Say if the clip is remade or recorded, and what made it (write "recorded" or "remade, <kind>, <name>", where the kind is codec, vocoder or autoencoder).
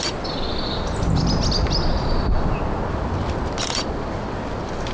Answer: recorded